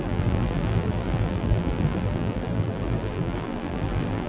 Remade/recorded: remade